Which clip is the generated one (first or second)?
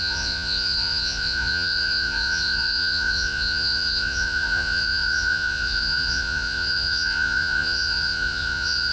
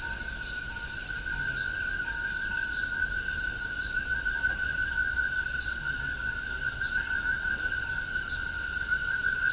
first